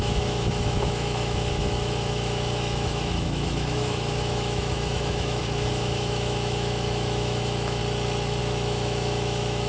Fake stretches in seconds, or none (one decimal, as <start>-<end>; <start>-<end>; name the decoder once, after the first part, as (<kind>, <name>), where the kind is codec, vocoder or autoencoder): 0.0-7.8 (autoencoder, DAC-VAE); 8.4-9.7